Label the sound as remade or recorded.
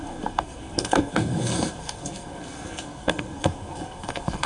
remade